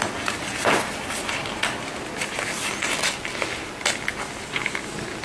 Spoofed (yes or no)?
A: no